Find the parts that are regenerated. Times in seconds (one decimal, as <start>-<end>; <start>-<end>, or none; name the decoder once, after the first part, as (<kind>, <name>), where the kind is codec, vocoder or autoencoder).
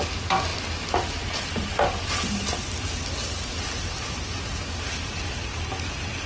none